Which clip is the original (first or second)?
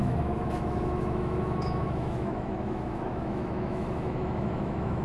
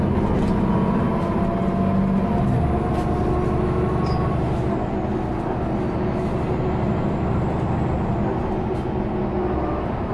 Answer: second